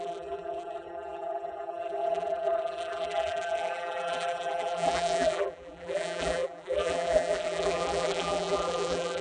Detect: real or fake fake